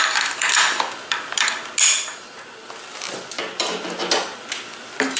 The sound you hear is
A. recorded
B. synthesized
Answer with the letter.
A